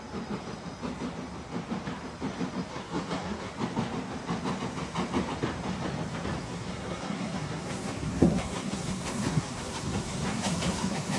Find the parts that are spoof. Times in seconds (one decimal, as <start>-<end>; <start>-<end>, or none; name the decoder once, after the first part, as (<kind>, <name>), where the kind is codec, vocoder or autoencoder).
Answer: 2.7-3.5 (codec, SNAC); 6.4-11.2